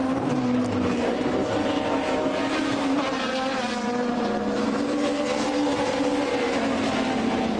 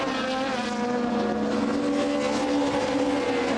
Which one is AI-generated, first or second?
first